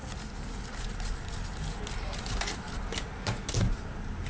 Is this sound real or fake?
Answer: real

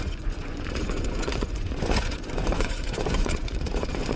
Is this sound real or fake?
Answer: fake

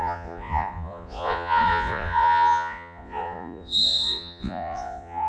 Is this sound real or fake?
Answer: fake